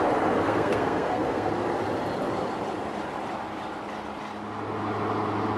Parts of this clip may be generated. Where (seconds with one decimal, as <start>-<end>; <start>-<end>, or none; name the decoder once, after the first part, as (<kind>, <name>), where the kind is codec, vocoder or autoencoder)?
0.4-1.5 (codec, SNAC)